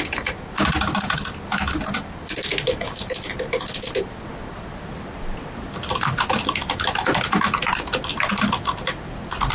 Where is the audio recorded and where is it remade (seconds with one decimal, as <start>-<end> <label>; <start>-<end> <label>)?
0.0-9.5 recorded